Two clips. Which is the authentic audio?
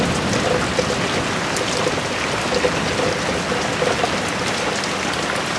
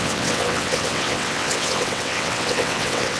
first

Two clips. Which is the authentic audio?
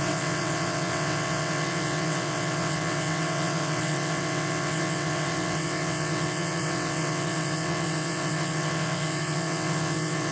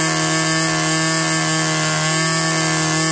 second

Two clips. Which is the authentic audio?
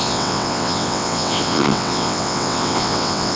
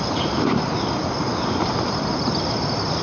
second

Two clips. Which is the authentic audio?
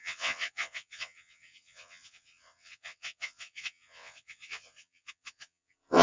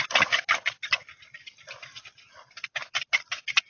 second